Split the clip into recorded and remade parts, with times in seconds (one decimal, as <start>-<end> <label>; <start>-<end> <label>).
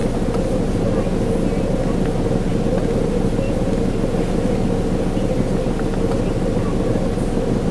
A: 0.0-7.7 recorded